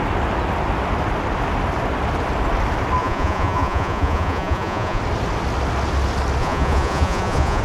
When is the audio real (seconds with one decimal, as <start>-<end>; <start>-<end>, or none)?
0.0-3.0; 5.0-6.4